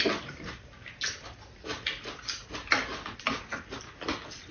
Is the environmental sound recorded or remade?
recorded